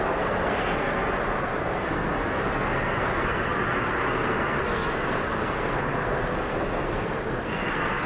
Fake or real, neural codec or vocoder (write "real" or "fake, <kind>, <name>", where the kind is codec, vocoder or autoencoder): fake, codec, SNAC